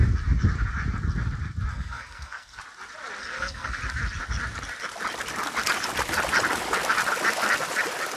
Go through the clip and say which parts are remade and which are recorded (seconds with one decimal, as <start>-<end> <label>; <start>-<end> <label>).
0.0-1.7 recorded; 1.7-2.6 remade; 2.6-3.2 recorded; 3.2-3.8 remade; 3.8-8.2 recorded